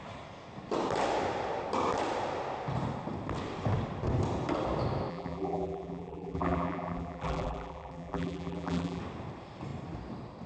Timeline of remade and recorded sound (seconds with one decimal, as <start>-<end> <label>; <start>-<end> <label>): 0.0-5.1 recorded; 5.1-9.0 remade; 9.0-10.5 recorded